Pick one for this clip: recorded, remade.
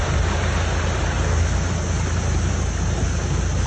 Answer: recorded